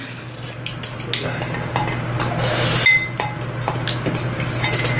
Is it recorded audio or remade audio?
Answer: recorded